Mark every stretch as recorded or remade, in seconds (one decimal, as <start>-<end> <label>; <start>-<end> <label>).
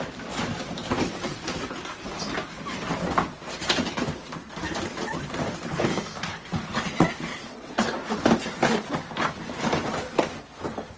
0.0-7.3 recorded; 7.3-7.9 remade; 7.9-11.0 recorded